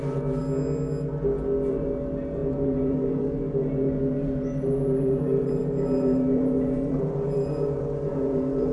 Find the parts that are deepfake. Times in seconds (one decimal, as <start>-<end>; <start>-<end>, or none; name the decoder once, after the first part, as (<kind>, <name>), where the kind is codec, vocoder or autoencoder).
0.0-0.4 (vocoder, BigVGAN v2); 1.7-8.7